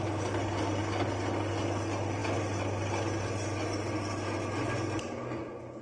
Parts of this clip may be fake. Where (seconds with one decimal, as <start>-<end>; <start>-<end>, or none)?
none